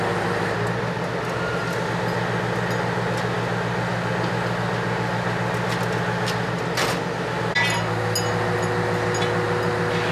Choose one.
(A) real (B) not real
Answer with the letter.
A